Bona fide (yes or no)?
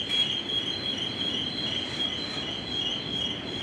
yes